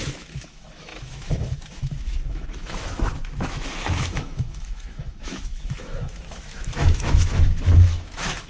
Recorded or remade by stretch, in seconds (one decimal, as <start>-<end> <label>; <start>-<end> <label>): 0.0-8.5 remade